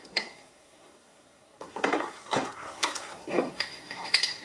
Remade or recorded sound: remade